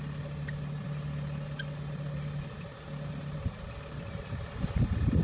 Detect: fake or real real